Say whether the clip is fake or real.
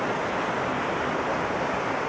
real